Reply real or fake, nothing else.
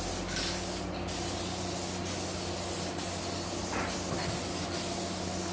real